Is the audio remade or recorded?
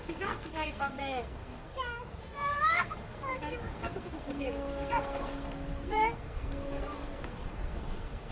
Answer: remade